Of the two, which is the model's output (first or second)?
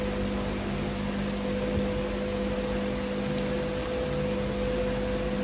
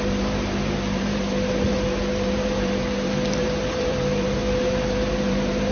second